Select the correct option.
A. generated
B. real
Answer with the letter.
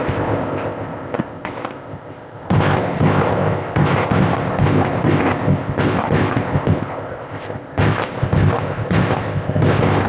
A